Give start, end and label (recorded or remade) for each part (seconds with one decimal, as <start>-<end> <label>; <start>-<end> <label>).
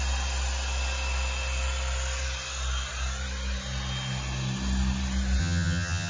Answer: 0.0-5.4 recorded; 5.4-6.1 remade